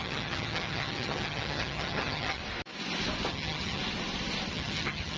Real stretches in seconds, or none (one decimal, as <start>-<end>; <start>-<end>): 2.4-3.3; 3.8-4.5